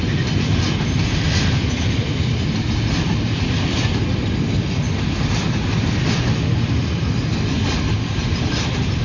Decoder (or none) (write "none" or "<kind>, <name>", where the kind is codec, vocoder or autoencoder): none